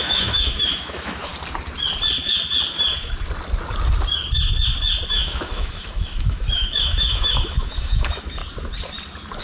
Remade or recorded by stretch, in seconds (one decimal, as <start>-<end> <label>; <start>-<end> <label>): 0.0-1.3 remade; 1.3-5.1 recorded; 5.1-8.4 remade; 8.4-9.4 recorded